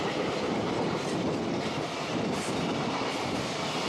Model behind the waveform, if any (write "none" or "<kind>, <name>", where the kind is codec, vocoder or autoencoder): none